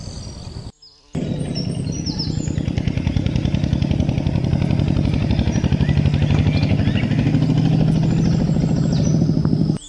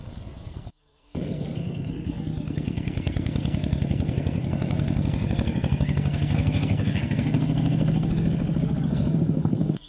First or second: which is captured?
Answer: first